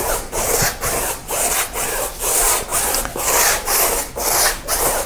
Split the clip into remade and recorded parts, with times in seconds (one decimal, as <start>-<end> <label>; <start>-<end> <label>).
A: 0.0-5.1 recorded